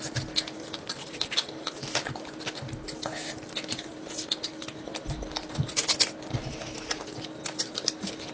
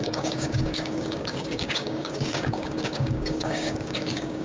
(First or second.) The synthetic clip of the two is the second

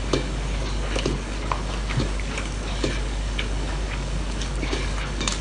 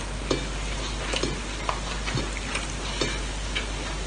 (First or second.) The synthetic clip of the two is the first